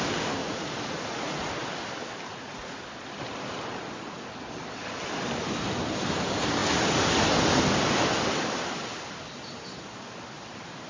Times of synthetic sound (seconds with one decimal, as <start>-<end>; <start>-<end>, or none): 0.4-1.5; 2.3-2.8